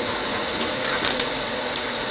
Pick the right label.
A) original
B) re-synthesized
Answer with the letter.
B